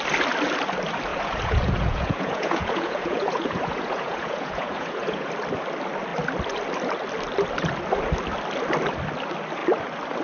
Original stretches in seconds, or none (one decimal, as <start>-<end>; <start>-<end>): 0.0-1.1; 5.3-10.2